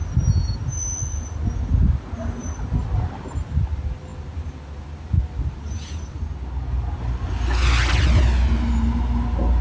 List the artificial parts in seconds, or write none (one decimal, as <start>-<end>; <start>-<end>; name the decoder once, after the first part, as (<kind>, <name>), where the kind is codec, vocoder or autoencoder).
none